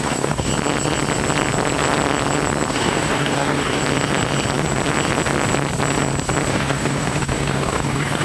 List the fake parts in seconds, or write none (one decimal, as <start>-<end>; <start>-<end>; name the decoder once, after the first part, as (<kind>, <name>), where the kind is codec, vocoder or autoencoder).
0.0-0.5 (codec, DAC); 2.7-3.8; 6.5-8.2